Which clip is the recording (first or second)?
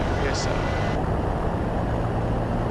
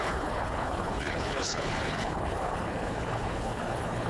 first